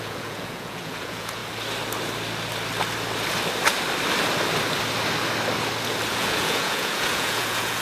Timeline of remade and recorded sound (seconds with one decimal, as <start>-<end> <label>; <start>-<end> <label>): 0.0-1.4 remade; 1.4-6.1 recorded; 6.1-7.8 remade